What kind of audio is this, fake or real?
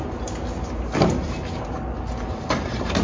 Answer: real